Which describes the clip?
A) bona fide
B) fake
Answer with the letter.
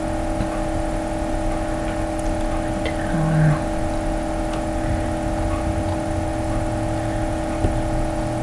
A